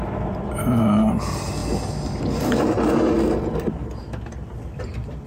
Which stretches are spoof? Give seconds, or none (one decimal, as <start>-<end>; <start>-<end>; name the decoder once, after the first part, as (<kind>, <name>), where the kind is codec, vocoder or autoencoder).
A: none